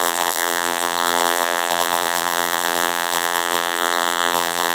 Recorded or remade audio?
remade